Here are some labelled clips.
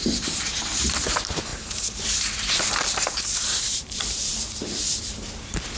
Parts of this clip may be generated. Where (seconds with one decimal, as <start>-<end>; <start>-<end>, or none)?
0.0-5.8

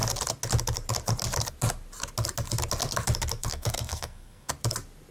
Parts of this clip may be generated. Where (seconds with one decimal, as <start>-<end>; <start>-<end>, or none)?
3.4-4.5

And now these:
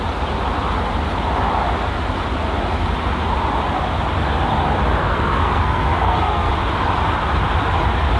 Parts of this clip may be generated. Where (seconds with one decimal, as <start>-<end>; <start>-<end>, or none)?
5.0-6.5

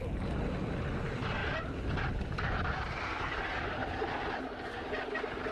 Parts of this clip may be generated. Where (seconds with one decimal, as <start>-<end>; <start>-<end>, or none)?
none

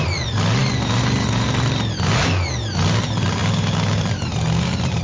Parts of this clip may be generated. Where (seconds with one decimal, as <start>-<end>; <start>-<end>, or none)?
0.0-0.6; 3.0-3.4; 4.0-5.0

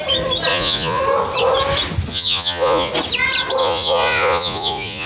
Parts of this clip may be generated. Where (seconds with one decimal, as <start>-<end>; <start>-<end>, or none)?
0.5-1.0; 2.1-2.9; 3.6-5.1